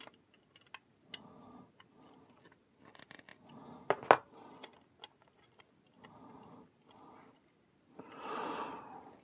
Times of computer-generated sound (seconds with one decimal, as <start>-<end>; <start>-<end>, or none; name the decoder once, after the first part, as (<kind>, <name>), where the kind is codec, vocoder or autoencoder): none